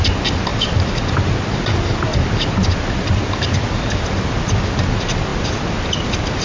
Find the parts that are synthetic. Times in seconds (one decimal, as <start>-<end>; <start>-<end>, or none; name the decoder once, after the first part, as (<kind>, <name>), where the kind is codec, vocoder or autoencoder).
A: none